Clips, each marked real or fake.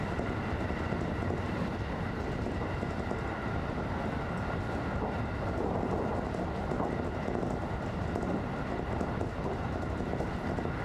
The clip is fake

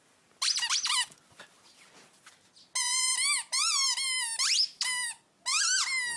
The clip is real